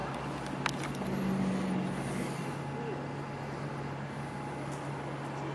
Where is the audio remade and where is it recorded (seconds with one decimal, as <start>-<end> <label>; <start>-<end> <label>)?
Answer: 0.0-5.5 recorded